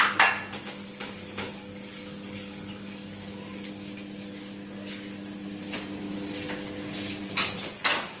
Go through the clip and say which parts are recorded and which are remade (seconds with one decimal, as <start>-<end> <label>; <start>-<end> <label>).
0.0-0.8 recorded; 0.8-3.7 remade; 3.7-8.2 recorded

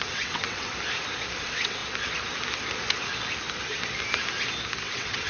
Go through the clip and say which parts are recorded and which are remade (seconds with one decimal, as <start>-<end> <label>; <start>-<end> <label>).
0.0-0.7 remade; 0.7-1.4 recorded; 1.4-1.8 remade; 1.8-4.8 recorded; 4.8-5.3 remade

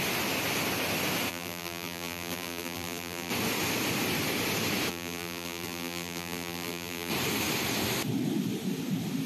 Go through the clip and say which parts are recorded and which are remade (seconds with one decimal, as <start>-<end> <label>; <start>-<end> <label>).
0.0-1.3 recorded; 1.3-3.3 remade; 3.3-4.9 recorded; 4.9-7.1 remade; 7.1-9.3 recorded

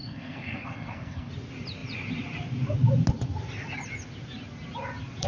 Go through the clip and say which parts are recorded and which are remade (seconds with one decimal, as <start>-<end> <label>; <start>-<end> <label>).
0.0-1.3 remade; 1.3-5.3 recorded

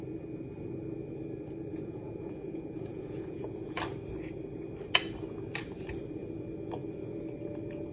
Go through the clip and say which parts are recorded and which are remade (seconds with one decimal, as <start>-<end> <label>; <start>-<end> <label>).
0.0-1.7 recorded; 1.7-3.8 remade; 3.8-7.9 recorded

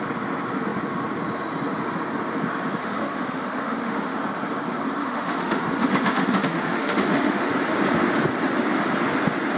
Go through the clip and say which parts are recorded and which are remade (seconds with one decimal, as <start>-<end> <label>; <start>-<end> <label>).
0.0-2.8 recorded; 2.8-4.2 remade; 4.2-5.0 recorded; 5.0-7.5 remade; 7.5-9.6 recorded